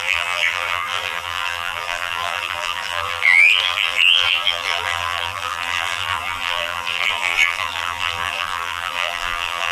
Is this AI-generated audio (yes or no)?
yes